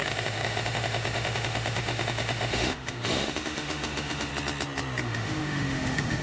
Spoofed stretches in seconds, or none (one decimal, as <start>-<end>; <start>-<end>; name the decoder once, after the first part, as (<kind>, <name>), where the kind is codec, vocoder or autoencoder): 0.0-4.3 (autoencoder, DAC-VAE); 5.0-6.2